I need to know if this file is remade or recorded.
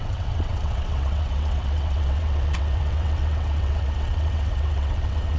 remade